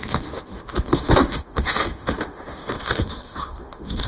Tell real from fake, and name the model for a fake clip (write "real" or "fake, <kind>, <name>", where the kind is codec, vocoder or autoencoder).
fake, autoencoder, DAC-VAE